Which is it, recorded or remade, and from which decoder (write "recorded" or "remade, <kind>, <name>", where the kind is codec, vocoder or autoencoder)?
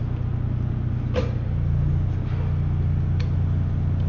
recorded